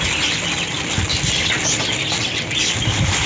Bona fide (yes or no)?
yes